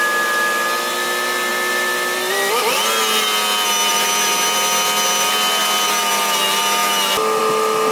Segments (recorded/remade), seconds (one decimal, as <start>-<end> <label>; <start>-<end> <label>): 0.0-7.9 recorded